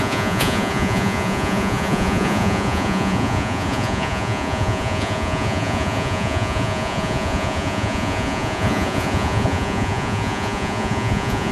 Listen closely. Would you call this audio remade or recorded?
remade